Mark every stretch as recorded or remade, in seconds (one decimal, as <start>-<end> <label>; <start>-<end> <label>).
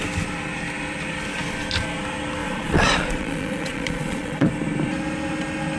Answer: 0.0-2.4 recorded; 2.4-4.5 remade; 4.5-5.8 recorded